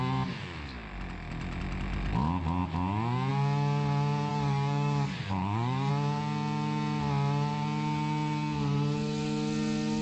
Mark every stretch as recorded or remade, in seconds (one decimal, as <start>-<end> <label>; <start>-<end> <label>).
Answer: 0.0-4.3 recorded; 4.3-5.9 remade; 5.9-10.0 recorded